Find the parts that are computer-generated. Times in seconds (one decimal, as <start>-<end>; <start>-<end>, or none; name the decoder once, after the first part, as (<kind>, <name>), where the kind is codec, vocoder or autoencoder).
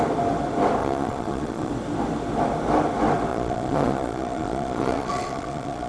0.8-1.7 (vocoder, Vocos); 3.3-5.9